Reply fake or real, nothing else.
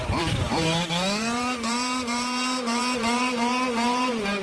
fake